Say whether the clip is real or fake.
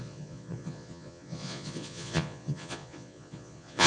fake